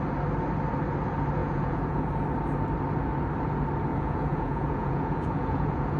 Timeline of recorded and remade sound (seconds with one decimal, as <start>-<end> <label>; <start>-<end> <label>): 0.0-1.4 recorded; 1.4-2.1 remade; 2.1-3.9 recorded; 3.9-6.0 remade